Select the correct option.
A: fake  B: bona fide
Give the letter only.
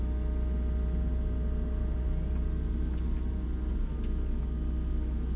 B